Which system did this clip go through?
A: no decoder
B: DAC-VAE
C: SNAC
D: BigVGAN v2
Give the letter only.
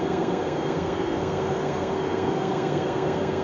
C